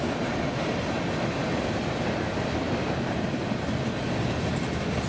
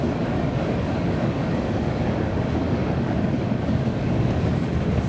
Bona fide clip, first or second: first